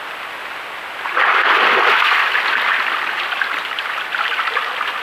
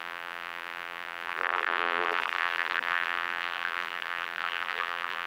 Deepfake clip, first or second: second